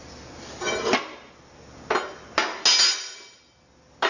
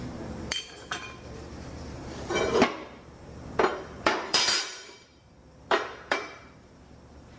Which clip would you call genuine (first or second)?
first